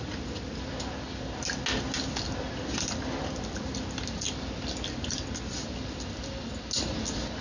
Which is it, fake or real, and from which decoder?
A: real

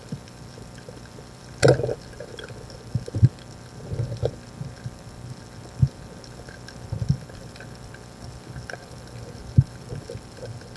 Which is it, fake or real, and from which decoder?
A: real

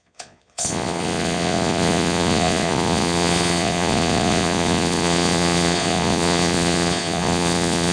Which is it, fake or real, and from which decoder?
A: fake, vocoder, Vocos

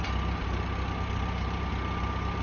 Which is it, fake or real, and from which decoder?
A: real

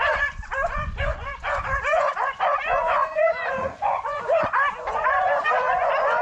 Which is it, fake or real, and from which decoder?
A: fake, vocoder, Vocos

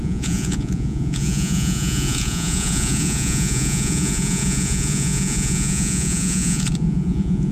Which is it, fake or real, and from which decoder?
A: fake, vocoder, Vocos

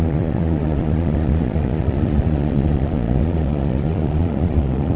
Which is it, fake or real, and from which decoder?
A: fake, vocoder, Vocos